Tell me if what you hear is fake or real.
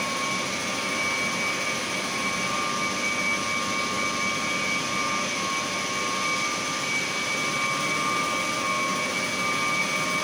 real